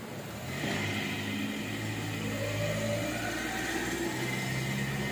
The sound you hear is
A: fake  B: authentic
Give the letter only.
B